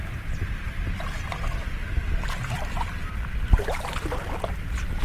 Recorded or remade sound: recorded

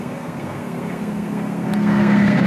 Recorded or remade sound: remade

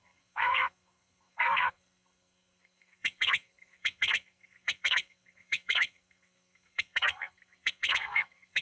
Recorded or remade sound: remade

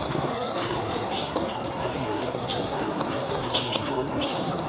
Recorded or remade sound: remade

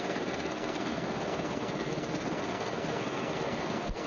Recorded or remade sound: remade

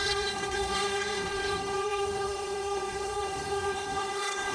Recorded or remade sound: remade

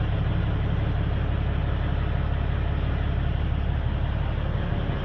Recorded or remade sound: recorded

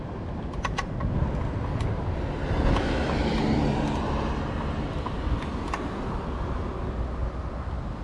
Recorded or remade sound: recorded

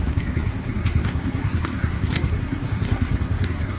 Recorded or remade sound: remade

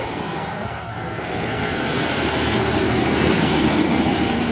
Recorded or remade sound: remade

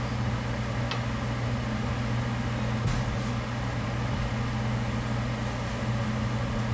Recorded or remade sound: recorded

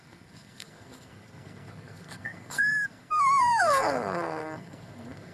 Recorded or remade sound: remade